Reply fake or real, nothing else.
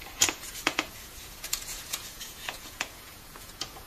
fake